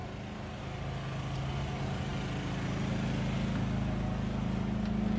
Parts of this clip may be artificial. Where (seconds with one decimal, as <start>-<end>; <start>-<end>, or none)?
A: none